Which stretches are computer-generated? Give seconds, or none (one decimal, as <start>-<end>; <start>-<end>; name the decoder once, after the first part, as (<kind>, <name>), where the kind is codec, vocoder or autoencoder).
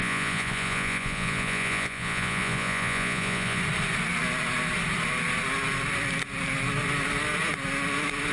0.0-3.6 (vocoder, Vocos)